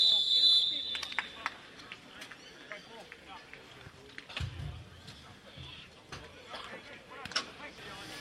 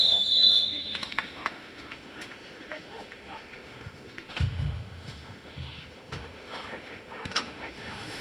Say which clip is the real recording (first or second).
first